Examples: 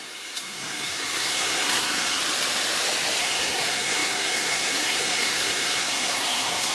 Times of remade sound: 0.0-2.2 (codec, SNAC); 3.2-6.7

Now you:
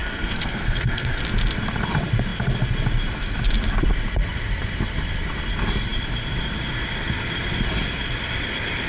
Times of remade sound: 0.0-1.2 (codec, SNAC)

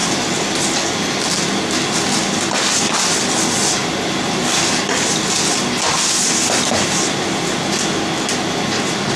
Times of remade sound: none

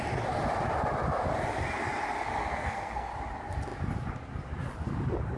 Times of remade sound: 2.4-3.1 (codec, SNAC)

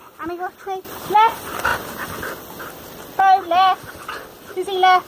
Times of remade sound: none

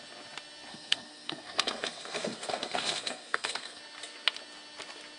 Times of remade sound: 0.7-3.8 (codec, SNAC)

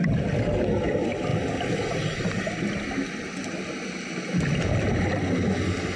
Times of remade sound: none